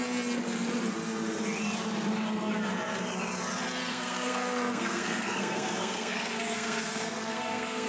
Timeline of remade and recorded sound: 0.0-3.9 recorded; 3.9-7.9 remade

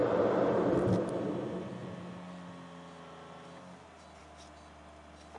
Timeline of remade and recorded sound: 0.0-5.4 recorded

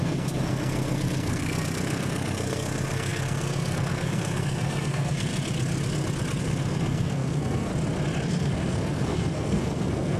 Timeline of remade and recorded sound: 0.0-5.3 remade; 5.3-6.4 recorded; 6.4-7.7 remade; 7.7-8.3 recorded; 8.3-10.2 remade

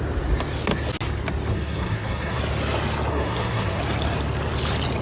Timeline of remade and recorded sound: 0.0-1.5 recorded; 1.5-2.4 remade; 2.4-3.1 recorded; 3.1-3.8 remade; 3.8-5.0 recorded